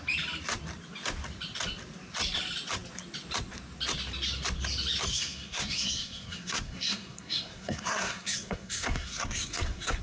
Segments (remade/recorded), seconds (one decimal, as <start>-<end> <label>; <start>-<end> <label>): 0.0-5.1 recorded; 5.1-10.0 remade